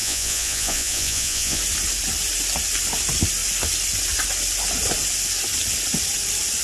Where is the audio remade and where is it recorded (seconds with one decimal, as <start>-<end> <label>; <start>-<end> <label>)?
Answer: 0.0-1.6 remade; 1.6-6.6 recorded